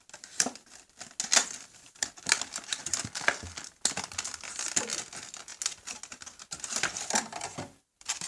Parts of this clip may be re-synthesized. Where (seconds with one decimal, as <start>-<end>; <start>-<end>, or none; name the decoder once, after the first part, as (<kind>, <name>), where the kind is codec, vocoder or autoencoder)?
none